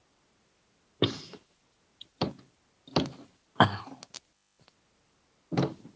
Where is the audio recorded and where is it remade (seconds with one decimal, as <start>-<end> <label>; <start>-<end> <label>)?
0.0-6.0 recorded

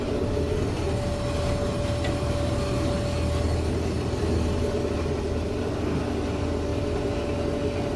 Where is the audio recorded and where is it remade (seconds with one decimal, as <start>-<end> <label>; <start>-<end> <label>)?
0.0-8.0 recorded

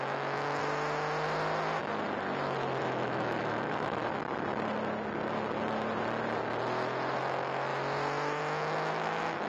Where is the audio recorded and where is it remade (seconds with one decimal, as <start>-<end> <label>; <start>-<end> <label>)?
0.0-0.6 remade; 0.6-2.8 recorded; 2.8-4.0 remade; 4.0-7.2 recorded; 7.2-7.7 remade; 7.7-8.4 recorded; 8.4-9.5 remade

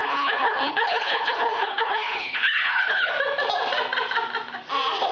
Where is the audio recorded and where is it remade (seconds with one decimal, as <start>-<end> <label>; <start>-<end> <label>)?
0.0-3.1 remade; 3.1-5.1 recorded

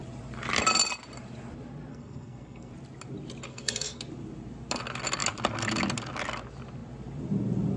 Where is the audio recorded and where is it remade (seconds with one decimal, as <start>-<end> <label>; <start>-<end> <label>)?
0.0-1.9 recorded; 1.9-2.7 remade; 2.7-3.5 recorded; 3.5-4.0 remade; 4.0-7.8 recorded

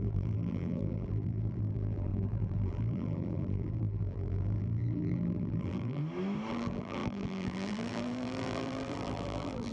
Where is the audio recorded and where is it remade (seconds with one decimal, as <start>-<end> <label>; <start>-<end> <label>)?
0.0-6.0 remade; 6.0-6.5 recorded; 6.5-9.7 remade